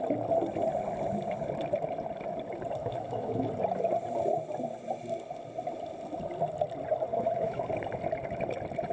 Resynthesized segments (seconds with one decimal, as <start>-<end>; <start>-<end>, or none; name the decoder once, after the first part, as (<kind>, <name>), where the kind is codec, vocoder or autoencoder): 2.8-3.5 (autoencoder, DAC-VAE); 7.1-7.7